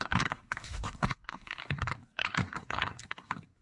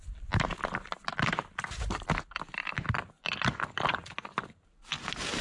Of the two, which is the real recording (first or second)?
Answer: second